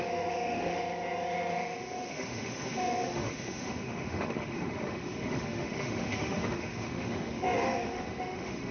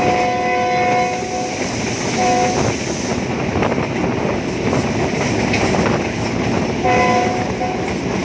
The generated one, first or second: first